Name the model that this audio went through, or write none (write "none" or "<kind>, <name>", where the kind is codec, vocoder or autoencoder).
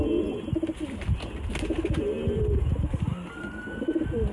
none